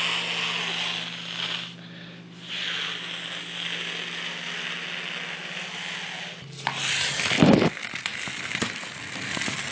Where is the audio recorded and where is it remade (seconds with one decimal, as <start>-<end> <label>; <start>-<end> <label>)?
0.0-9.7 recorded

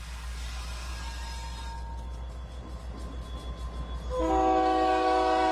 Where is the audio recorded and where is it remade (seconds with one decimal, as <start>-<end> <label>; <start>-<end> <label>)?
0.0-0.9 remade; 0.9-4.2 recorded; 4.2-5.5 remade

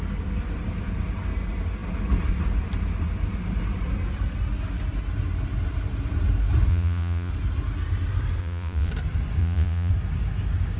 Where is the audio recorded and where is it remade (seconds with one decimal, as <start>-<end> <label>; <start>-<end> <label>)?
0.0-6.7 recorded; 6.7-7.3 remade; 7.3-8.4 recorded; 8.4-8.9 remade; 8.9-9.4 recorded; 9.4-9.9 remade; 9.9-10.8 recorded

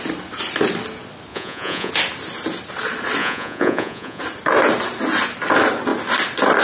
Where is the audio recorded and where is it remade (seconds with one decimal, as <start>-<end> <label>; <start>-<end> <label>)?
0.0-1.3 recorded; 1.3-1.9 remade; 1.9-3.2 recorded; 3.2-4.2 remade; 4.2-6.6 recorded

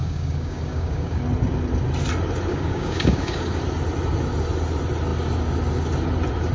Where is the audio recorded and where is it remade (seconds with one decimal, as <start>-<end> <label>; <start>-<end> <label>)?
0.0-1.2 remade; 1.2-2.5 recorded; 2.5-3.6 remade; 3.6-6.5 recorded